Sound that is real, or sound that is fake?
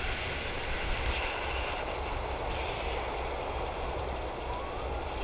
fake